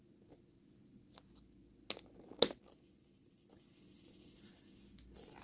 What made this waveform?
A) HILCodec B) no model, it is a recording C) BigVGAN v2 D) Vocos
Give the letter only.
B